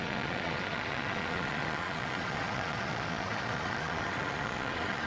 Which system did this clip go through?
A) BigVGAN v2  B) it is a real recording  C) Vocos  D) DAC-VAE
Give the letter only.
C